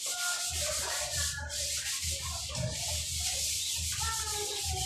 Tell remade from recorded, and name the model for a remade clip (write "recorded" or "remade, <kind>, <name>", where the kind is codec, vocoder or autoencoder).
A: recorded